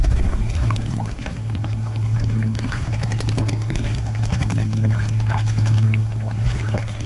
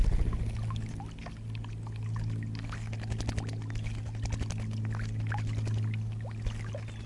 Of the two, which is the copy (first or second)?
first